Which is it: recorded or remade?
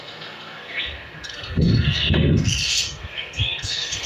remade